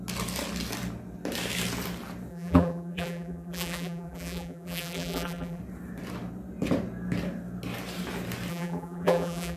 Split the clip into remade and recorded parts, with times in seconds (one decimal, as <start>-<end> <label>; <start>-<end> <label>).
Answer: 0.0-2.3 recorded; 2.3-5.6 remade; 5.6-8.5 recorded; 8.5-9.6 remade